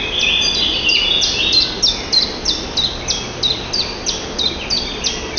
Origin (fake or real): real